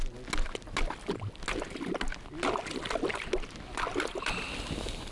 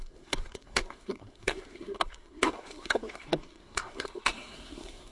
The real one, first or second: first